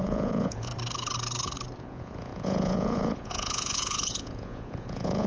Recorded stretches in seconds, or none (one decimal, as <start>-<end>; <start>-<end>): 0.7-1.8